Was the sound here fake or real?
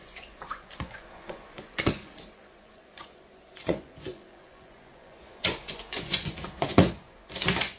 fake